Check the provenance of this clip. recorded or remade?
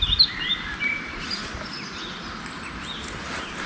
recorded